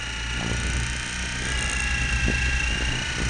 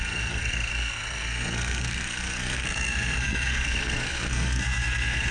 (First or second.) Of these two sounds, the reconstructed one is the second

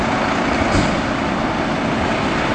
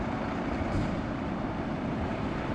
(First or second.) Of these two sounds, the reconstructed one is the second